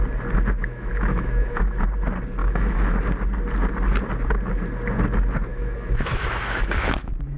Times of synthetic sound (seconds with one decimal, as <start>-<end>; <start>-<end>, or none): 0.6-1.7; 2.4-3.0; 5.5-7.4